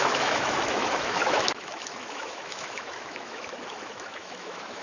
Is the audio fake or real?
fake